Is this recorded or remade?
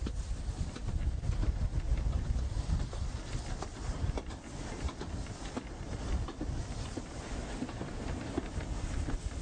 recorded